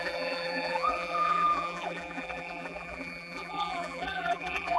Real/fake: fake